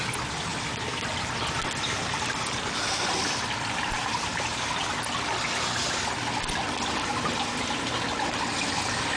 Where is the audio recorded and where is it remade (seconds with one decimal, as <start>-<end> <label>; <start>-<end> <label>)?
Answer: 0.0-9.2 recorded